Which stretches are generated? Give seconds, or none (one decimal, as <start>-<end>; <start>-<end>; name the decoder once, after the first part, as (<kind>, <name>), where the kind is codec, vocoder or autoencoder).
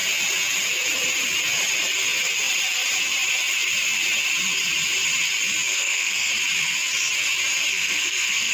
5.7-6.3 (codec, SNAC); 7.7-8.5